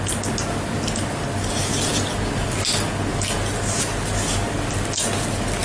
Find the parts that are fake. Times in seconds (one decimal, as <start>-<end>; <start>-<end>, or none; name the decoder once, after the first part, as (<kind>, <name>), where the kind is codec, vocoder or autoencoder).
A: none